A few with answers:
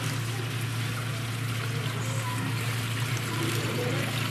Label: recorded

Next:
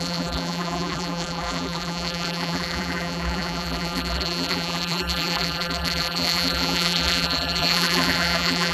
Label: remade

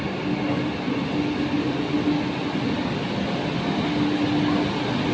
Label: recorded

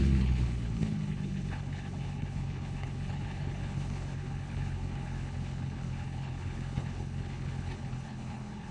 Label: remade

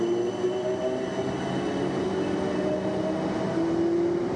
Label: recorded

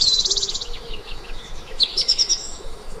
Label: remade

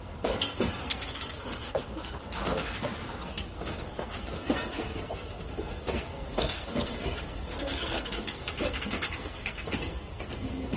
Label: remade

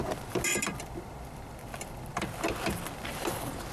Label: recorded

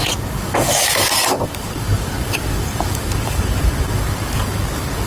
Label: remade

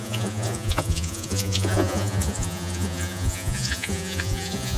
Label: remade